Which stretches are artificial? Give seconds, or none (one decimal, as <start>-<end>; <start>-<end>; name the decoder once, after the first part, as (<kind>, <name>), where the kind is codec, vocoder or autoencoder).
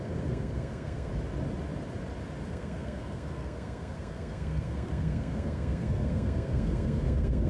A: 0.0-1.1 (codec, SNAC); 2.5-7.5